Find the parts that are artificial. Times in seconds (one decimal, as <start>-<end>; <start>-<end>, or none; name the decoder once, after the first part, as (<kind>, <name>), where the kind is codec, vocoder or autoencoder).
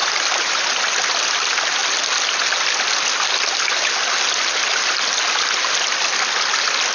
0.0-0.6 (vocoder, BigVGAN v2)